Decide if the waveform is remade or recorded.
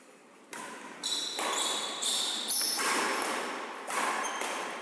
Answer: recorded